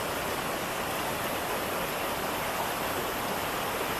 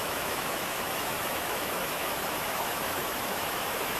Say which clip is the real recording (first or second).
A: first